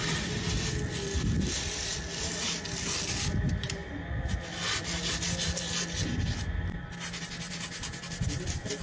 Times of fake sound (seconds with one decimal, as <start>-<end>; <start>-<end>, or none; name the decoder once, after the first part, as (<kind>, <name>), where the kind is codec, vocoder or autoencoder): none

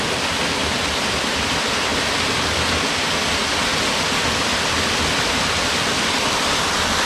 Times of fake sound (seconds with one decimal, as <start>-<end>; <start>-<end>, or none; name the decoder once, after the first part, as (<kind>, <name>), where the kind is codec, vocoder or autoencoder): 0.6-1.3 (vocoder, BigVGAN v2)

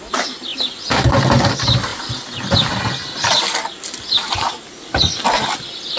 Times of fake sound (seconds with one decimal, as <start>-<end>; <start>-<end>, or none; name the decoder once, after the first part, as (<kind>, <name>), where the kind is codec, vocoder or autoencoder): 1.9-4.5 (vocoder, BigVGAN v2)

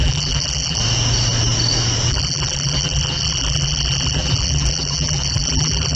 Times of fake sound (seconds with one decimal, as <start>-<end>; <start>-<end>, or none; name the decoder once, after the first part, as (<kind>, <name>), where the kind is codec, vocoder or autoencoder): 0.0-0.8 (vocoder, BigVGAN v2); 2.1-6.0